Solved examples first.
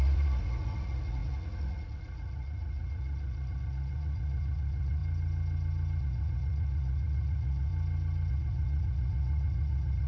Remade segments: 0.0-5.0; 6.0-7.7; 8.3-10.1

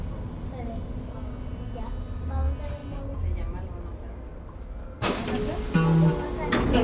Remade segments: none

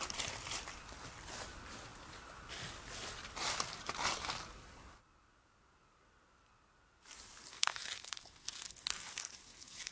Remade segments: 7.5-9.9

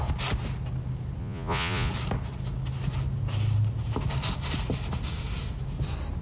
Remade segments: 1.2-1.9

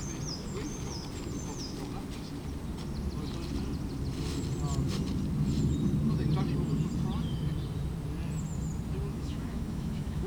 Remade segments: 9.1-10.3

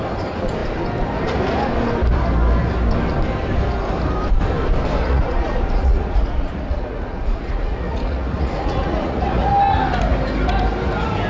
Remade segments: 5.0-9.5

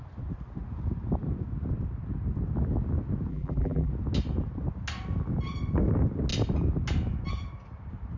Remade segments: 3.3-3.9